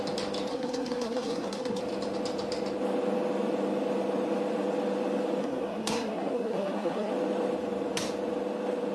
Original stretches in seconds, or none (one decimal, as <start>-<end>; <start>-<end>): 0.0-0.5; 1.8-5.4; 7.1-8.9

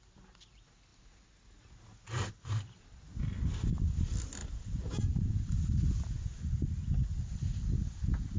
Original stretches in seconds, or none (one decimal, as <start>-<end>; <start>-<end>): 0.0-8.4